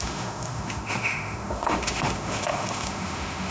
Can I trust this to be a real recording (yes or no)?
no